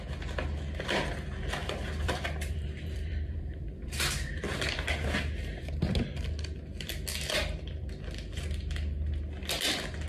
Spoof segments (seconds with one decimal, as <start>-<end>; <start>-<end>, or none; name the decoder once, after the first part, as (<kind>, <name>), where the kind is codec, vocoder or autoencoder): 1.6-5.7 (vocoder, BigVGAN v2)